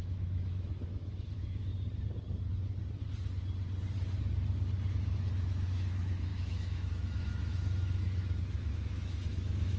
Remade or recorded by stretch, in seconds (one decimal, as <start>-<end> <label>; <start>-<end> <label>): 0.0-1.7 remade; 1.7-4.9 recorded; 4.9-9.8 remade